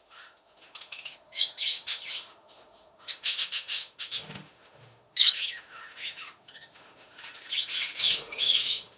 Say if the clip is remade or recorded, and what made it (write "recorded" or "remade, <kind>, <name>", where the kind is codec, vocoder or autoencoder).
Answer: remade, autoencoder, DAC-VAE